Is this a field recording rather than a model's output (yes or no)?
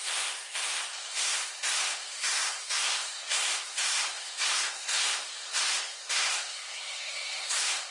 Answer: no